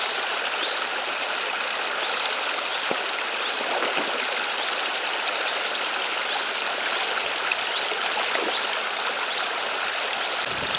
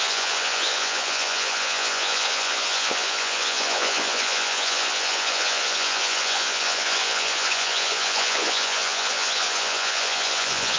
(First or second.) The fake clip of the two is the second